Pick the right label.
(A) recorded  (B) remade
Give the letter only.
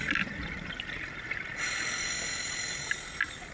A